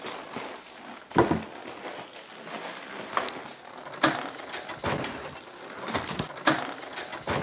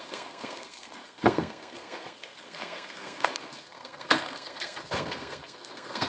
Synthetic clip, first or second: second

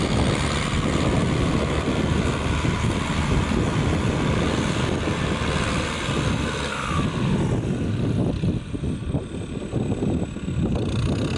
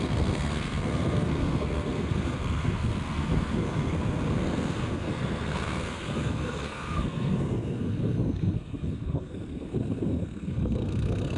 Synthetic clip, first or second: second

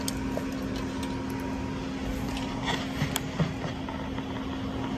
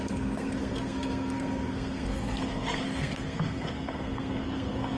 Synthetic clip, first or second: second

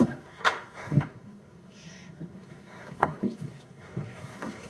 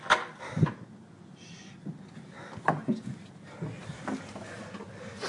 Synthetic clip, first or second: first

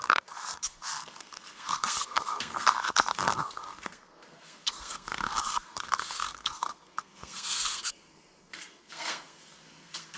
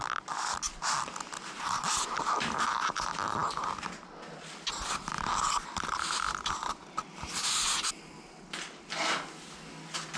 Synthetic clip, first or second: first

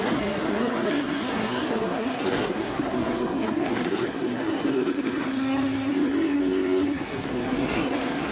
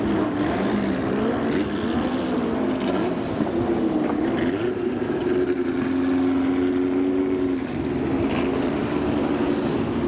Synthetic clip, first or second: first